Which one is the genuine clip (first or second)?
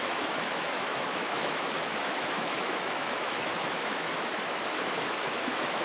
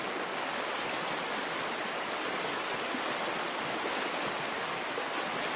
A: second